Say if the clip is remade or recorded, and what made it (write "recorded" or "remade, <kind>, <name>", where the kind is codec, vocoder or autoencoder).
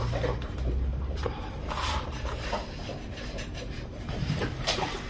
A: remade, vocoder, BigVGAN v2